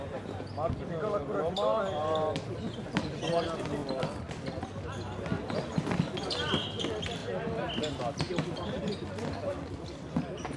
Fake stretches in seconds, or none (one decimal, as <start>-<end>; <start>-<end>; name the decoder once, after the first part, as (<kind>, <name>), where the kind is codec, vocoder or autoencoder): none